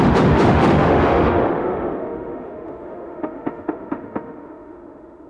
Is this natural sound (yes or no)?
no